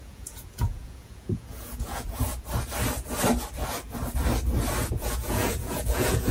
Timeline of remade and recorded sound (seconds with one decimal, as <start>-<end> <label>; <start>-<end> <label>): 0.0-2.3 remade; 2.3-4.9 recorded; 4.9-6.3 remade